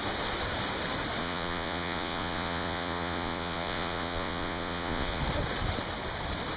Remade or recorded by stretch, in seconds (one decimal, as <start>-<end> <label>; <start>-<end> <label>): 0.0-1.2 recorded; 1.2-5.2 remade; 5.2-6.6 recorded